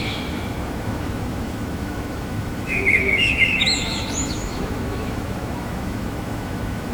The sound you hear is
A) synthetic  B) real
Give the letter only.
A